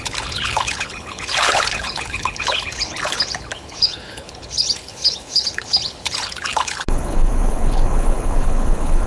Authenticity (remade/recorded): remade